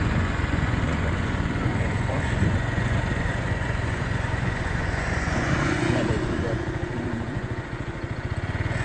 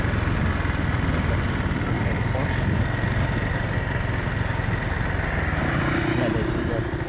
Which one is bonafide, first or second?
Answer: second